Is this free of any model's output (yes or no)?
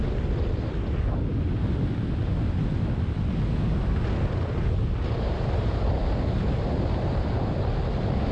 yes